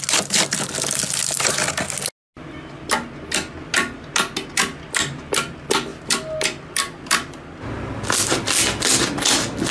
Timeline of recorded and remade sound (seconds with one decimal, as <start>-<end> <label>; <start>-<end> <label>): 0.0-9.7 recorded